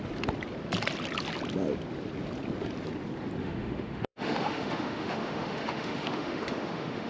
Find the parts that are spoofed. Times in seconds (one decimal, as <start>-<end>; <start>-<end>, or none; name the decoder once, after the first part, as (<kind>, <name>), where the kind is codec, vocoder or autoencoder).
3.4-7.1 (autoencoder, DAC-VAE)